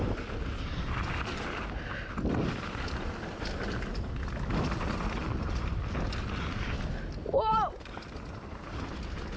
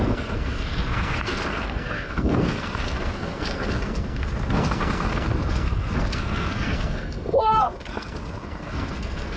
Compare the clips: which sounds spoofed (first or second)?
second